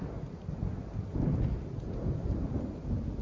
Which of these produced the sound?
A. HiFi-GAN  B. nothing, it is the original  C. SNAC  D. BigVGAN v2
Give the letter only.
D